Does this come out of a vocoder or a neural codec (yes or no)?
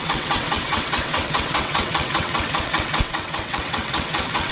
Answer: yes